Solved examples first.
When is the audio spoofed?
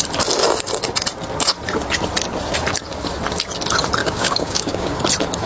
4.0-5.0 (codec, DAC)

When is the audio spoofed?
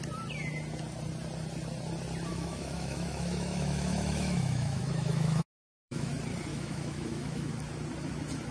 2.3-6.1 (autoencoder, DAC-VAE); 6.5-7.5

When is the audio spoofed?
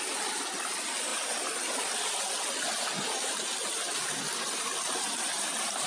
none